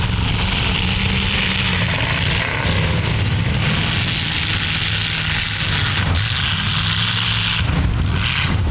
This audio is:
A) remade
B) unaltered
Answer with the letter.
B